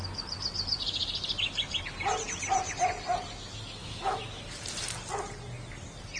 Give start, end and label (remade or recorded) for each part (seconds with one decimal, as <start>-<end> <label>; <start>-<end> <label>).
0.0-3.8 recorded; 3.8-4.4 remade; 4.4-6.2 recorded